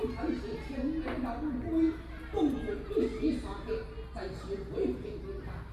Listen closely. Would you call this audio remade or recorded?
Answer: recorded